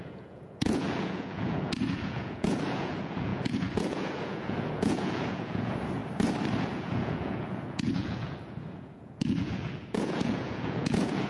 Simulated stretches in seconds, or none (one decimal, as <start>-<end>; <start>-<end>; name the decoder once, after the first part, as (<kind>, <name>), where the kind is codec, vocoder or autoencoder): 0.0-6.0 (vocoder, Vocos); 6.6-11.3